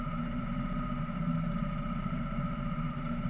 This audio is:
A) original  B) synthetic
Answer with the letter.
B